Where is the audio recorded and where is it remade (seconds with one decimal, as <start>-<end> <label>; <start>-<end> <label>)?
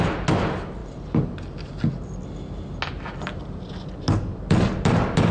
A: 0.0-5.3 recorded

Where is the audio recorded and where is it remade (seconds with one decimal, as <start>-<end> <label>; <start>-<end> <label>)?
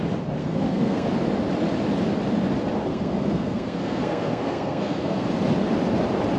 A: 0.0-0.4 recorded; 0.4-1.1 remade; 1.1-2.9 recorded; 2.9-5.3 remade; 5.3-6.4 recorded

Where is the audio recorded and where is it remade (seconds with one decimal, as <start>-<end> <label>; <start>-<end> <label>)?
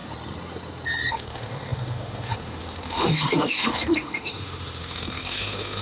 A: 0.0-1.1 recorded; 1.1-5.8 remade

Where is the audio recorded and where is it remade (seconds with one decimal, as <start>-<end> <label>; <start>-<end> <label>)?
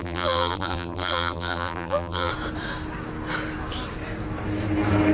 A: 0.0-2.3 remade; 2.3-5.1 recorded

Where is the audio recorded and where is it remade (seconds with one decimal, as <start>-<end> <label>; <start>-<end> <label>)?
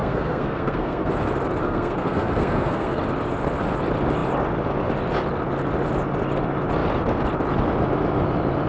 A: 0.0-1.1 remade; 1.1-1.6 recorded; 1.6-3.0 remade; 3.0-8.7 recorded